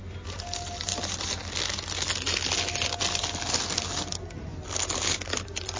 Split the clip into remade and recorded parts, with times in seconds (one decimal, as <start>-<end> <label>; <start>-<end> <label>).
0.0-5.8 recorded